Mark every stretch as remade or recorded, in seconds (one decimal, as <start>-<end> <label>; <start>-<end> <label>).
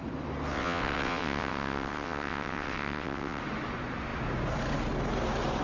0.0-0.5 recorded; 0.5-3.4 remade; 3.4-5.6 recorded